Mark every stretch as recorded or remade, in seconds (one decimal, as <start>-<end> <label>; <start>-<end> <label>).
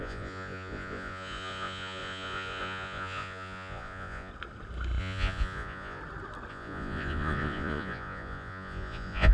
0.0-4.3 remade; 4.3-5.0 recorded; 5.0-6.0 remade; 6.0-6.5 recorded; 6.5-9.3 remade